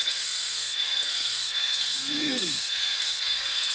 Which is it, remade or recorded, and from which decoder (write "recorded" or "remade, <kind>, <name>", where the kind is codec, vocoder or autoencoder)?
remade, codec, SNAC